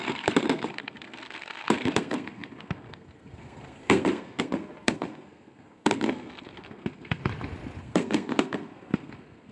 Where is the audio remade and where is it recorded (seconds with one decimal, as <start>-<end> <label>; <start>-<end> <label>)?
0.0-7.2 remade; 7.2-7.8 recorded; 7.8-9.5 remade